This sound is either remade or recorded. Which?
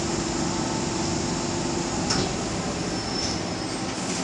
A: recorded